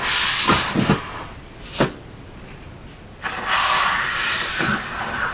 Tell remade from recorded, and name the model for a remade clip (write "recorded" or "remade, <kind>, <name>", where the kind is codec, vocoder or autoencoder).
recorded